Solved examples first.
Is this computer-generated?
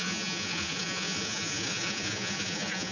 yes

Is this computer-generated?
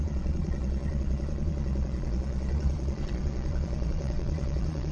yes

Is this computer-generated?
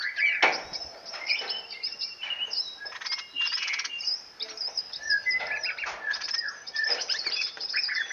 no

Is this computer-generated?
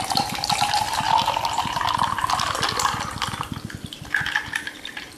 no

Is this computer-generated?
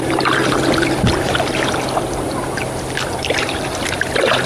no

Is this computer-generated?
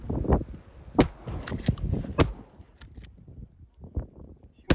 no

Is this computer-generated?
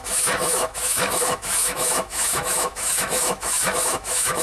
yes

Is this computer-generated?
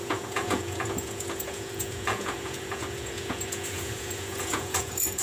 yes